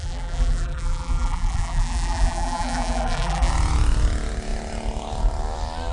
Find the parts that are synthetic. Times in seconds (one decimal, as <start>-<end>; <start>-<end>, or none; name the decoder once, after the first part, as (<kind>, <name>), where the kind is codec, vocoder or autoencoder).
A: 0.0-3.5 (vocoder, BigVGAN v2)